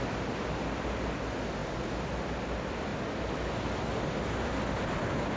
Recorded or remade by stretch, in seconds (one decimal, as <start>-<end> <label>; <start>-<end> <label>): 0.0-5.4 recorded